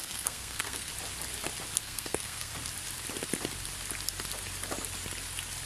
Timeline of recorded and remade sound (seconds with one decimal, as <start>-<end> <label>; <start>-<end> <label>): 0.0-0.9 remade; 0.9-1.8 recorded; 1.8-2.5 remade; 2.5-5.7 recorded

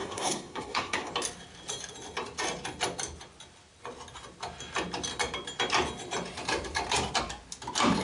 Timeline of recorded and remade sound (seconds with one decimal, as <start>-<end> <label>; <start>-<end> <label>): 0.0-1.1 remade; 1.1-8.0 recorded

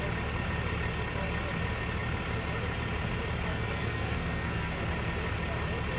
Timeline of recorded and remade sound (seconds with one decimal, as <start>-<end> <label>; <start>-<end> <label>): 0.0-3.5 recorded; 3.5-4.8 remade; 4.8-6.0 recorded

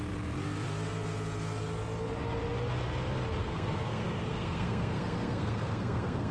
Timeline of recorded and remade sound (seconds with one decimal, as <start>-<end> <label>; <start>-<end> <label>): 0.0-3.4 recorded; 3.4-6.3 remade